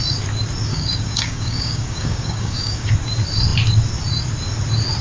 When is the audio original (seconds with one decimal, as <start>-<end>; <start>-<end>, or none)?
0.0-0.7; 2.9-5.0